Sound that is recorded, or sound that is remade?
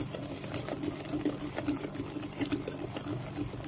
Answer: recorded